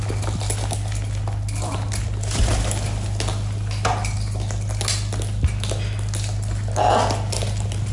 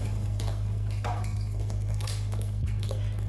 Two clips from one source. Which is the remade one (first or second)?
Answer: second